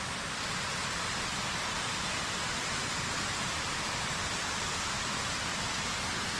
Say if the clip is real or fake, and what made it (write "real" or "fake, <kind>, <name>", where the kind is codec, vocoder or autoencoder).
real